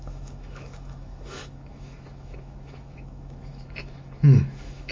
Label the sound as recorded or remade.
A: remade